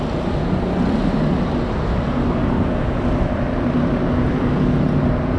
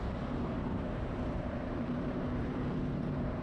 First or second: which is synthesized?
second